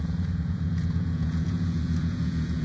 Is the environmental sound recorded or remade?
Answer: remade